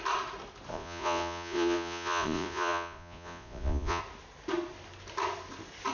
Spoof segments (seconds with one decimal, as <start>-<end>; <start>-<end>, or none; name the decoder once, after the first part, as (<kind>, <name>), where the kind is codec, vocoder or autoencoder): 0.7-4.0 (vocoder, Vocos)